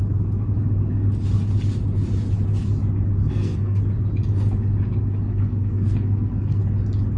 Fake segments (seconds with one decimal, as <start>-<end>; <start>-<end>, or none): 3.2-3.8; 5.3-6.6